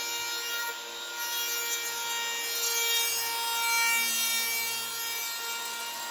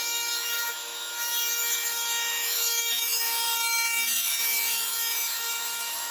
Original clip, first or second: first